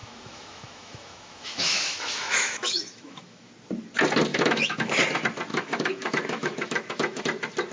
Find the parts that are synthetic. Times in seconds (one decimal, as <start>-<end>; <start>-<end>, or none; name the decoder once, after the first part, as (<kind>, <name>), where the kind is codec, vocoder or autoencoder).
0.0-3.5 (autoencoder, DAC-VAE); 4.3-4.9; 5.5-7.2